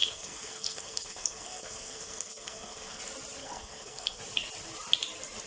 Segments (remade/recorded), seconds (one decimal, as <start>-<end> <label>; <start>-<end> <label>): 0.0-3.0 remade; 3.0-3.4 recorded; 3.4-4.2 remade; 4.2-5.5 recorded

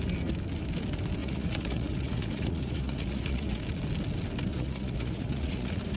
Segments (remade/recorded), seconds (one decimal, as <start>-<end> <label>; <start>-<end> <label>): 0.0-1.2 recorded; 1.2-3.6 remade; 3.6-4.5 recorded; 4.5-6.0 remade

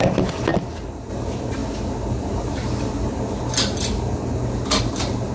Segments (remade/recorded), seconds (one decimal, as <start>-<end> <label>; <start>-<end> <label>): 0.0-5.3 recorded

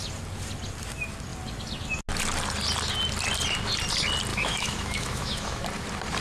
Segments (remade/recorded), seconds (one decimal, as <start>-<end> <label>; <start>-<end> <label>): 0.0-4.3 recorded; 4.3-5.6 remade; 5.6-6.2 recorded

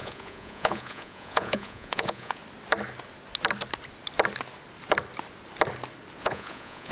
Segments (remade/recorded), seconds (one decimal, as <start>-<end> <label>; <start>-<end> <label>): 0.0-2.4 remade; 2.4-6.2 recorded; 6.2-6.9 remade

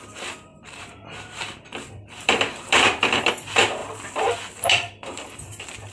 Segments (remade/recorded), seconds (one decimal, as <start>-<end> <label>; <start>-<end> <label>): 0.0-5.9 remade